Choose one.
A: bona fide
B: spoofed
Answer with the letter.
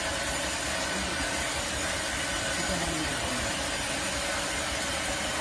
A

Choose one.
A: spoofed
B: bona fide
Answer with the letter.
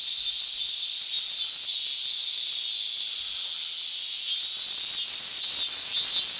B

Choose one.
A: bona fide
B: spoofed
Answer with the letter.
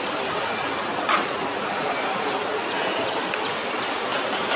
A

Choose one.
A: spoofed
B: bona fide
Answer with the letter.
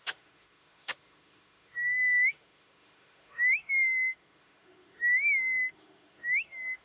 A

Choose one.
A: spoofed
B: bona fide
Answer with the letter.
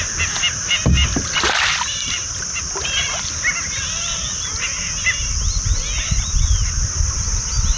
B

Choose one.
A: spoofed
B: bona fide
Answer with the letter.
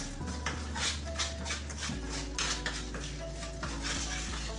B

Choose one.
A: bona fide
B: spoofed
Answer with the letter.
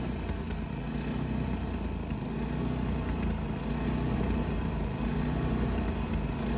A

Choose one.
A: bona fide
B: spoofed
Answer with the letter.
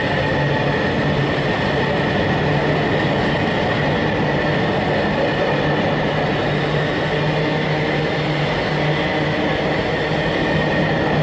A